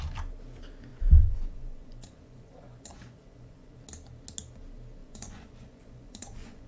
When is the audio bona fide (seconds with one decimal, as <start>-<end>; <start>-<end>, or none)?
0.0-0.9; 3.8-5.0